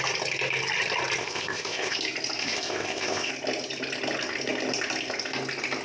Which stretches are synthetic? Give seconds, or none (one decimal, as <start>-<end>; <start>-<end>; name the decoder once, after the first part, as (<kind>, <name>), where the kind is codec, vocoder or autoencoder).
1.2-2.0 (codec, ZipCodec); 2.4-3.3